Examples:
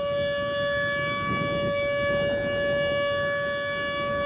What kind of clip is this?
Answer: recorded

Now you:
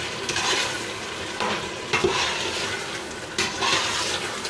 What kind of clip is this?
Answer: remade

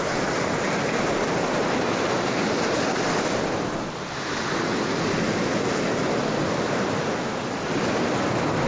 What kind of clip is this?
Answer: recorded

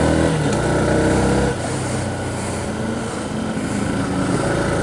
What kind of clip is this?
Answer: recorded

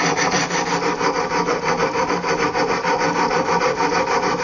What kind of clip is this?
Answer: recorded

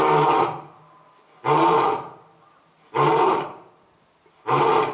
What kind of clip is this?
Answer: recorded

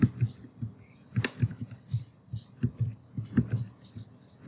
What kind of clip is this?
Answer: recorded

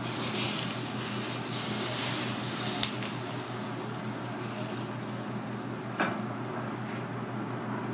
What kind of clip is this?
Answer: recorded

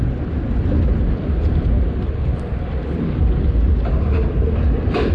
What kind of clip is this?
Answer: recorded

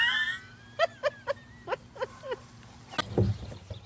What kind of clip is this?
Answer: recorded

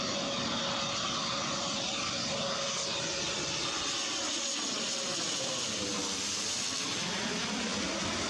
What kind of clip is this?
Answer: recorded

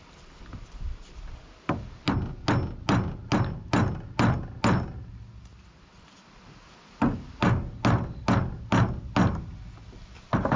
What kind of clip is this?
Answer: recorded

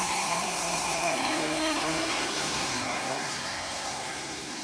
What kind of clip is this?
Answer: remade